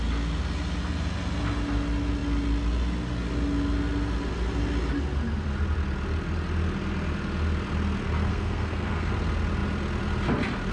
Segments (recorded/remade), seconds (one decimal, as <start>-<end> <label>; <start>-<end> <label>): 0.0-8.3 recorded; 8.3-9.1 remade; 9.1-10.7 recorded